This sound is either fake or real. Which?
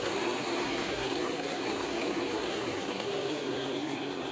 fake